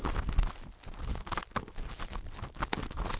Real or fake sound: real